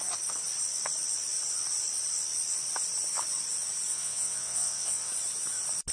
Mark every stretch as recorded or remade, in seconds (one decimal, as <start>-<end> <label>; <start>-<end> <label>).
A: 0.0-3.9 recorded; 3.9-5.1 remade; 5.1-5.9 recorded